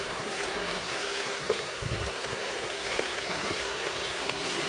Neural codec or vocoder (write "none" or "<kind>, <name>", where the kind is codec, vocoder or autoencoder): codec, SNAC